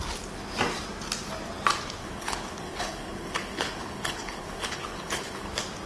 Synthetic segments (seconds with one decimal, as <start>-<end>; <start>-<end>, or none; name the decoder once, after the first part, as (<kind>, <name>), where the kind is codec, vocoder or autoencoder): 2.0-5.5 (codec, HILCodec)